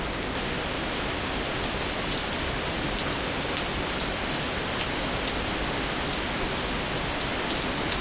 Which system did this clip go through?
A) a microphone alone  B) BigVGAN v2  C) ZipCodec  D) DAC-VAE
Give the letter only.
A